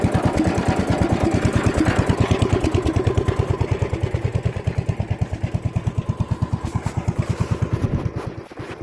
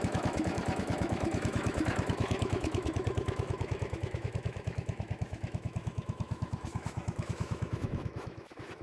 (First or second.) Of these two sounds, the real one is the first